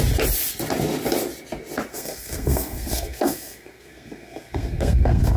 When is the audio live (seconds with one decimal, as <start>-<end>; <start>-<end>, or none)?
0.0-1.9